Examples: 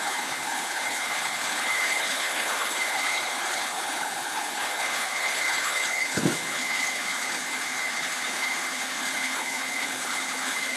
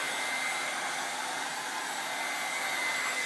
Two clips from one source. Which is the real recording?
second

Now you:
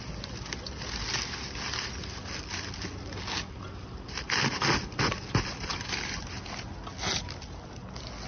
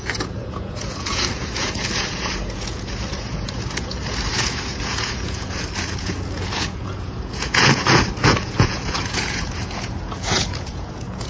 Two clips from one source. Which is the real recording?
first